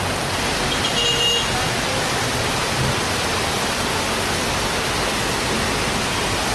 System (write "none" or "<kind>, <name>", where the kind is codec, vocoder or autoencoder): none